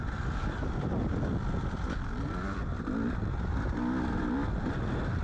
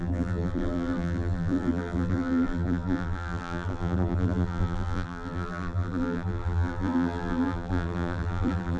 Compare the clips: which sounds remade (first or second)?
second